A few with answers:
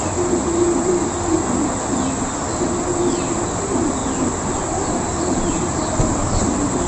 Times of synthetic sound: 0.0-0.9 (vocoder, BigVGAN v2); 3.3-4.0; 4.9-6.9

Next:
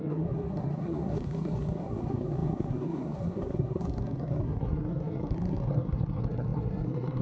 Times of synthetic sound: 0.0-7.2 (codec, SNAC)

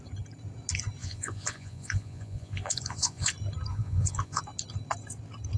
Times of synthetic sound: 1.0-3.3 (vocoder, Vocos); 3.7-4.4

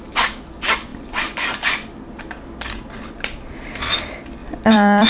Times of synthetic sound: 4.4-5.1 (vocoder, BigVGAN v2)

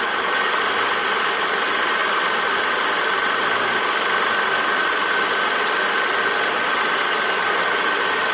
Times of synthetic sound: none

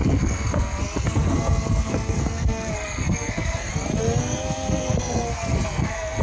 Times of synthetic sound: 0.0-3.7 (codec, SNAC); 4.2-6.2